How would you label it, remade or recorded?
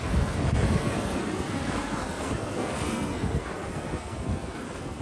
remade